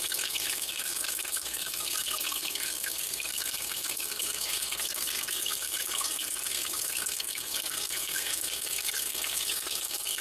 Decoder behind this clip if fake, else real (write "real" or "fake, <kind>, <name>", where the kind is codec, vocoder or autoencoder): fake, codec, SNAC